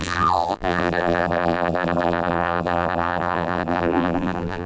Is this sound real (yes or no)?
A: no